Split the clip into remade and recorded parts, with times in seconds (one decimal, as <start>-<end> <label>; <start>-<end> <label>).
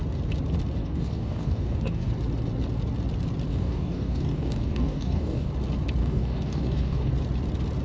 0.0-0.8 recorded; 0.8-2.1 remade; 2.1-3.5 recorded; 3.5-5.5 remade; 5.5-6.0 recorded; 6.0-7.1 remade; 7.1-7.8 recorded